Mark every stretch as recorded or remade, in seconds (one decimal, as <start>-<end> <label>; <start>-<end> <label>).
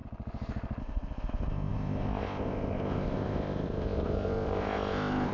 0.0-0.8 recorded; 0.8-5.3 remade